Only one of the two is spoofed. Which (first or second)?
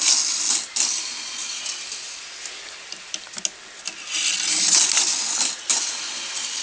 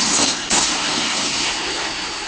second